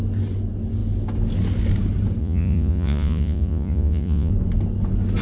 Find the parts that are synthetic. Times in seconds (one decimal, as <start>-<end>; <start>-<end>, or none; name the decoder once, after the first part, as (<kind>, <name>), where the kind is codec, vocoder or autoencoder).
2.2-4.3 (vocoder, Vocos)